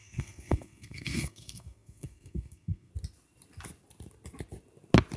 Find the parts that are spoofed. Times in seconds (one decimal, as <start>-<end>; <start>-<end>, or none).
0.0-2.9